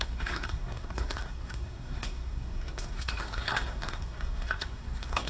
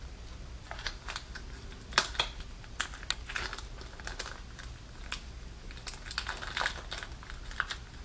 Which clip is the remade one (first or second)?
first